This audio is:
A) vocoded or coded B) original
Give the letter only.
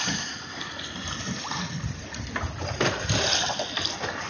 B